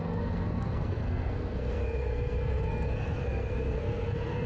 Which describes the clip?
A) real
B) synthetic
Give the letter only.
B